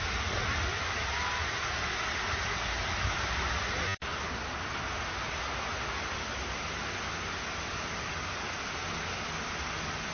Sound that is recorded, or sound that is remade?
recorded